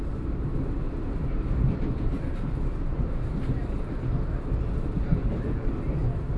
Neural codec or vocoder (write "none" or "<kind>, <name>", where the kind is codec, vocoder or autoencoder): none